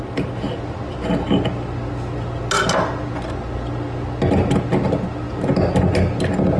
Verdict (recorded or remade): recorded